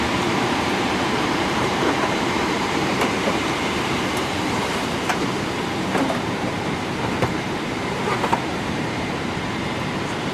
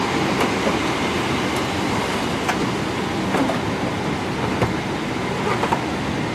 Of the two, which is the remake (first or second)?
first